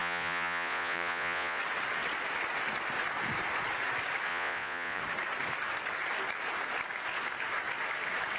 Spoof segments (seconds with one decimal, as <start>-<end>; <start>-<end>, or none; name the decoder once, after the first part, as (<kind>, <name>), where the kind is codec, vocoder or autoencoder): 0.0-1.6 (vocoder, Vocos); 4.3-5.0